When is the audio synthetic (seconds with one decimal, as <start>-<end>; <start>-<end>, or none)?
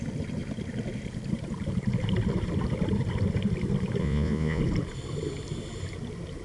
4.0-4.6